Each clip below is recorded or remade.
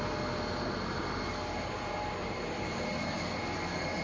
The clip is recorded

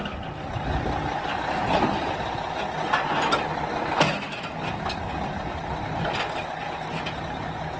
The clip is recorded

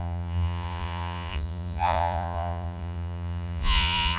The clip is remade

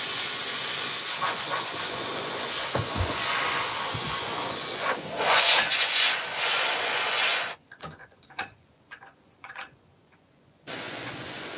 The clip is remade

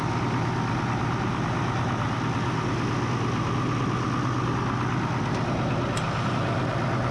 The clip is recorded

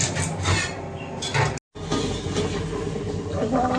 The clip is recorded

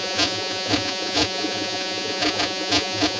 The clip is remade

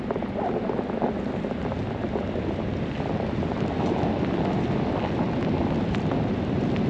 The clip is recorded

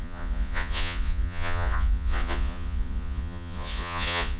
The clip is remade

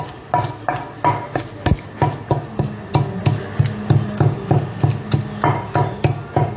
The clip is recorded